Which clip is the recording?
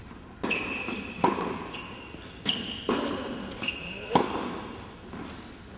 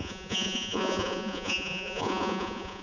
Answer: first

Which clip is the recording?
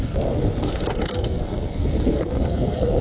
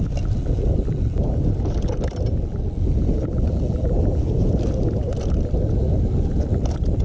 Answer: second